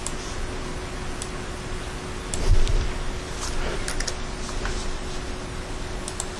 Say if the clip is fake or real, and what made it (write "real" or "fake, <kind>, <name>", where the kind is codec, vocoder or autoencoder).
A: real